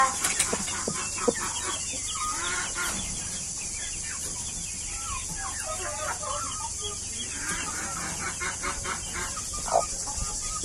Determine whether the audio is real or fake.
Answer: real